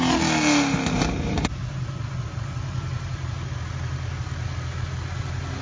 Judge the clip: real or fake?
real